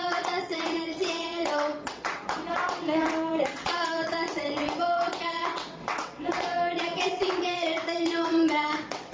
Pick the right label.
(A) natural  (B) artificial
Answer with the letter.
B